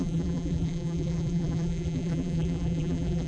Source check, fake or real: fake